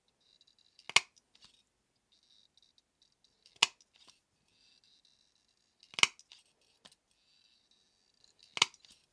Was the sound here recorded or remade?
recorded